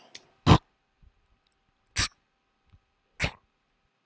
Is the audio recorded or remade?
recorded